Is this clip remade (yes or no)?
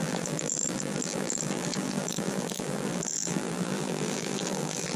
yes